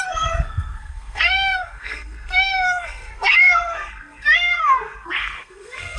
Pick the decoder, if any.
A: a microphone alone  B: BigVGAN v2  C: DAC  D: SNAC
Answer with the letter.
D